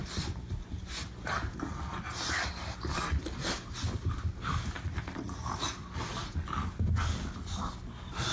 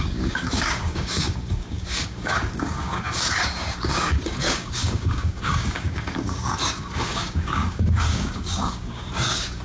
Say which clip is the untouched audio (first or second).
first